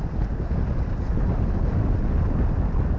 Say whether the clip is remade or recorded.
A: recorded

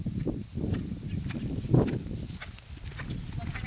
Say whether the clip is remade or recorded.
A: recorded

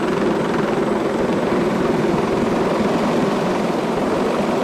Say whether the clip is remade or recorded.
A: recorded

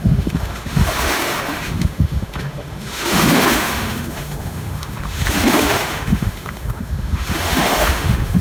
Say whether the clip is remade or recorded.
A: remade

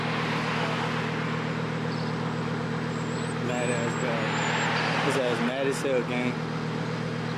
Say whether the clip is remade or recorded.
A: recorded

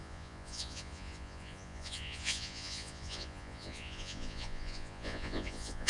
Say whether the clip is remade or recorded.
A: remade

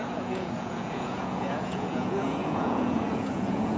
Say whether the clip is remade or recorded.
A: remade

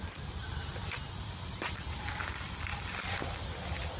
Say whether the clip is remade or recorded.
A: recorded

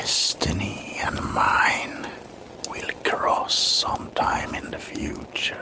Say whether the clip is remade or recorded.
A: recorded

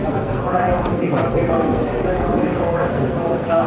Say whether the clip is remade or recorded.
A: remade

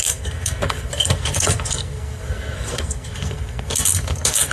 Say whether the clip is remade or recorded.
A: remade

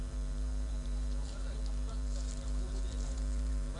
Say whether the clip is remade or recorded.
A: remade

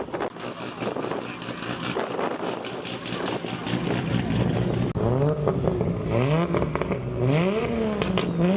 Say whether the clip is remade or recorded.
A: recorded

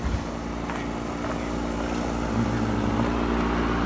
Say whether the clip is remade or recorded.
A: recorded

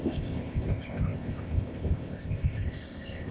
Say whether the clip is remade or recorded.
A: remade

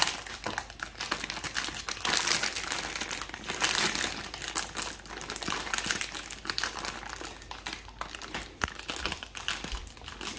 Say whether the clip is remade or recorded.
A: recorded